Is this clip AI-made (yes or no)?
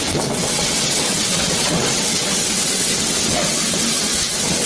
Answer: yes